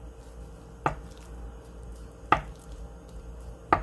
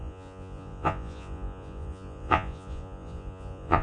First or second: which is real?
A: first